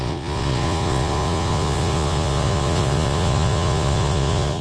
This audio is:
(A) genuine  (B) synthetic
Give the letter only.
B